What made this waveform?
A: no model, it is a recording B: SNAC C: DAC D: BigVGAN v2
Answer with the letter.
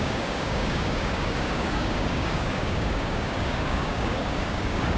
C